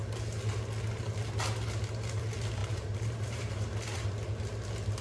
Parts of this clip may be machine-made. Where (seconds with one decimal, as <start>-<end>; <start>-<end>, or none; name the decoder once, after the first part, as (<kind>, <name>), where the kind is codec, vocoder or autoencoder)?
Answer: 2.6-3.5 (vocoder, BigVGAN v2)